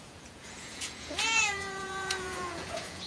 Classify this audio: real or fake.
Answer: fake